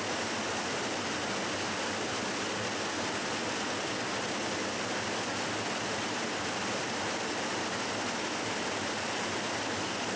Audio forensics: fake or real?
real